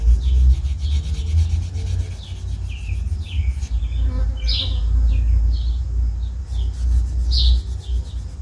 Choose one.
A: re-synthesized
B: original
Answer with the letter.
B